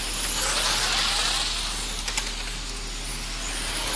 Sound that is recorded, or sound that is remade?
recorded